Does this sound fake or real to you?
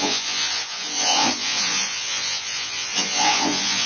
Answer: fake